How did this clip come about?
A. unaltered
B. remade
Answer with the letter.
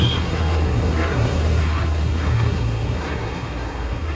B